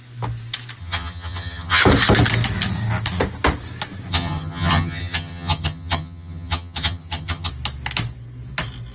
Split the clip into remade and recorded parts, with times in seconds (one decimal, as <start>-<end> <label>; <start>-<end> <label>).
0.0-0.8 recorded; 0.8-1.8 remade; 1.8-4.1 recorded; 4.1-7.5 remade; 7.5-8.9 recorded